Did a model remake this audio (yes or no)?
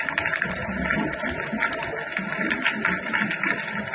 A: no